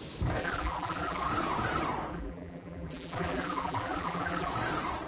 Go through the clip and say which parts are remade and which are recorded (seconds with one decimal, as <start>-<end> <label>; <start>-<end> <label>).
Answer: 0.0-0.4 recorded; 0.4-1.3 remade; 1.3-2.1 recorded; 2.1-4.5 remade; 4.5-5.1 recorded